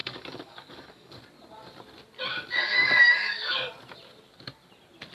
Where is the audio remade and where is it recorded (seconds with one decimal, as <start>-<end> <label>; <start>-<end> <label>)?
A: 0.0-1.2 remade; 1.2-2.3 recorded; 2.3-3.7 remade; 3.7-5.1 recorded